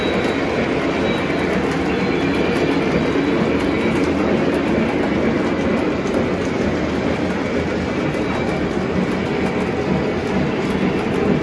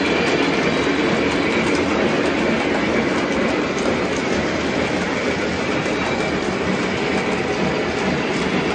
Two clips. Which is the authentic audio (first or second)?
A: first